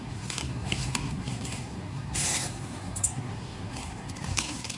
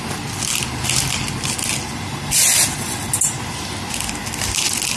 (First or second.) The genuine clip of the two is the second